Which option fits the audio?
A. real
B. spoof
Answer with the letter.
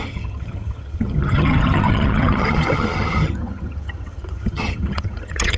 B